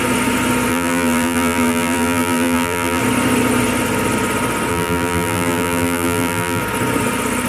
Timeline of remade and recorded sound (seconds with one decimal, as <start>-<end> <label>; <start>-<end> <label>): 0.0-0.7 recorded; 0.7-3.0 remade; 3.0-4.7 recorded; 4.7-6.6 remade; 6.6-7.5 recorded